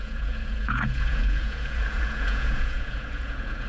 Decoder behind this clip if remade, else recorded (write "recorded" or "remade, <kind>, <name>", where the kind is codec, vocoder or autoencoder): remade, vocoder, Vocos